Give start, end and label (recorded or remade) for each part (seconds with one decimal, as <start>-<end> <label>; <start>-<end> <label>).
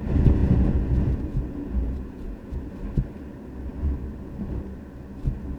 0.0-0.4 recorded; 0.4-2.7 remade; 2.7-5.6 recorded